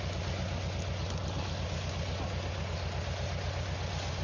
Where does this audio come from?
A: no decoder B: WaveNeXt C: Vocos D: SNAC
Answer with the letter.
A